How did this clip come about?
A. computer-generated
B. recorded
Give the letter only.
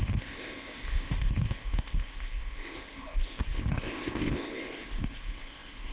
A